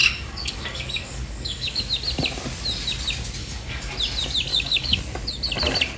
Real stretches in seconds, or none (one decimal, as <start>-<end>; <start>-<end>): 1.8-3.4; 3.9-4.5; 5.0-6.0